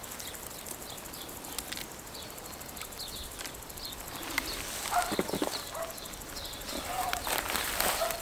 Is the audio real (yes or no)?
no